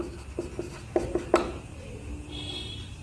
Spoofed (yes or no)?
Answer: no